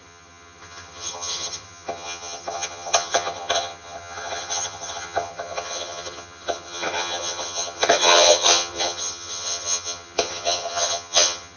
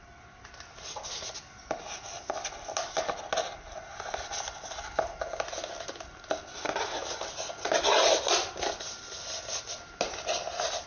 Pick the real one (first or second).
second